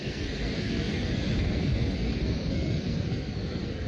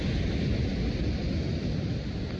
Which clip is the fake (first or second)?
first